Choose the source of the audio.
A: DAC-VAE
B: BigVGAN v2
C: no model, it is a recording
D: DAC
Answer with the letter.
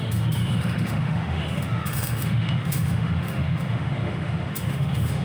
A